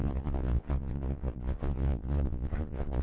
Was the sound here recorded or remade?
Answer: remade